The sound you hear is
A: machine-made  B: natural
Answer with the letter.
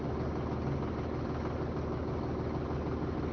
B